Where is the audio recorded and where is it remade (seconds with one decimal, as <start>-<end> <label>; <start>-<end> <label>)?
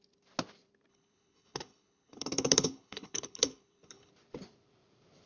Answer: 0.0-0.9 recorded; 0.9-4.1 remade; 4.1-5.3 recorded